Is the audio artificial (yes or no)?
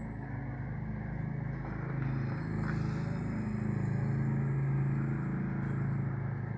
no